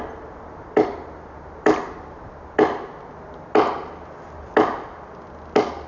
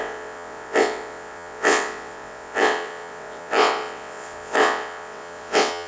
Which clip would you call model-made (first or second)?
second